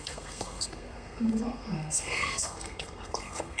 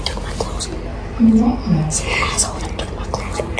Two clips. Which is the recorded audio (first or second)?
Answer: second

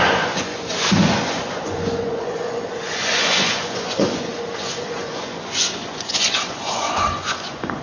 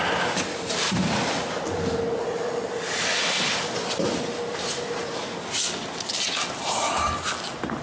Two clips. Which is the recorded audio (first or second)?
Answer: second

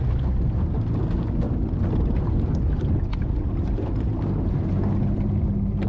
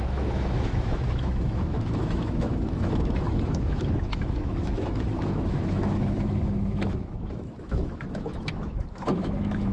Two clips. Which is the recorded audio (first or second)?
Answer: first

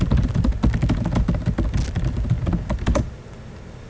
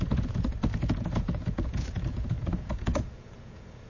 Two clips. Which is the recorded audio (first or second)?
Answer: first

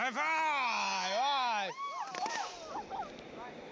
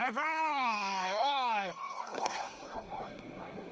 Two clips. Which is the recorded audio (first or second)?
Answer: first